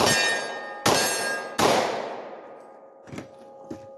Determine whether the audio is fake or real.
real